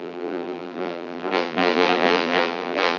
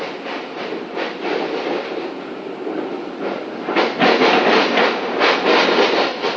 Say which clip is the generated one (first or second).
first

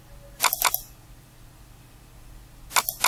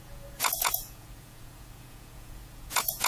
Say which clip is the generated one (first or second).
second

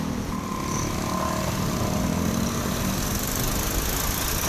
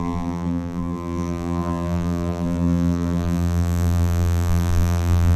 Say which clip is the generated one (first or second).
second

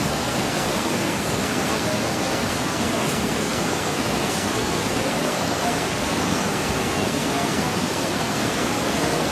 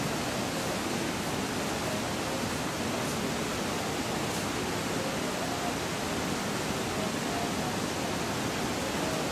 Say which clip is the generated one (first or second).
first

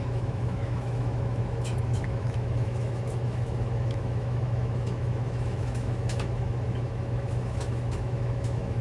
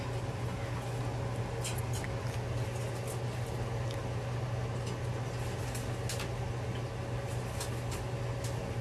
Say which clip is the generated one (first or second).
first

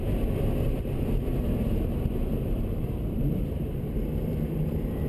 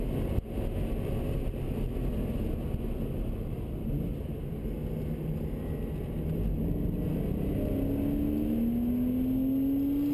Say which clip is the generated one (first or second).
first